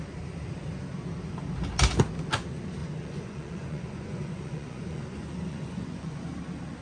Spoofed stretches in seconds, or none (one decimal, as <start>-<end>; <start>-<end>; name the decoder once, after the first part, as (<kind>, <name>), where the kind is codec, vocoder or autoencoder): 2.8-6.2 (vocoder, Vocos)